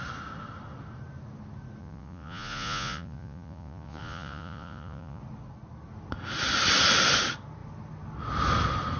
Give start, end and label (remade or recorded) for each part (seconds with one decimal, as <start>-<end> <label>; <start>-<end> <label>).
0.0-1.8 recorded; 1.8-5.2 remade; 5.2-9.0 recorded